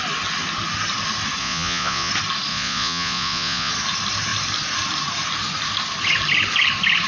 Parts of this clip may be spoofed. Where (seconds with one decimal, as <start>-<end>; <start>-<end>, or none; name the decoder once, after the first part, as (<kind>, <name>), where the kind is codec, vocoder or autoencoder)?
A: 1.4-2.1 (vocoder, Vocos); 2.5-3.7